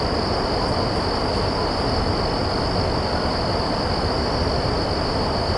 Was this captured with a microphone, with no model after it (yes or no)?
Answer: yes